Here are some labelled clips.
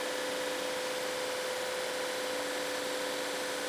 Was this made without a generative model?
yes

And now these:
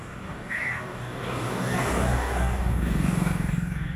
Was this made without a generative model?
no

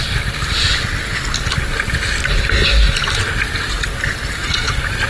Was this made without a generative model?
yes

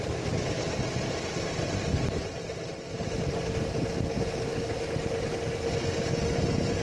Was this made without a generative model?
yes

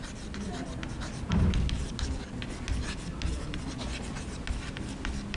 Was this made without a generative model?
yes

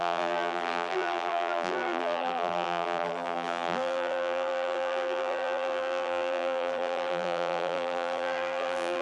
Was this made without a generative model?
no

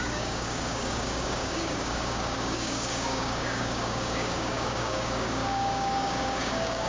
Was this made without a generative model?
no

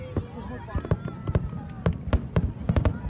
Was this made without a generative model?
yes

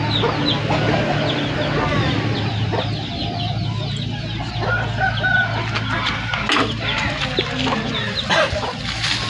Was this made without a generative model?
yes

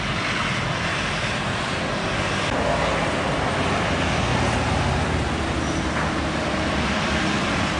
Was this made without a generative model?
yes